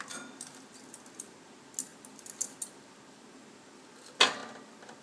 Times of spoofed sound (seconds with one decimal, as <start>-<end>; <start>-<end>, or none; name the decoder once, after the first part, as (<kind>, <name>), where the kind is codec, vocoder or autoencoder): none